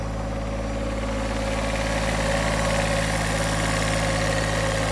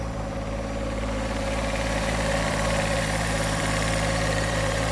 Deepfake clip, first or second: second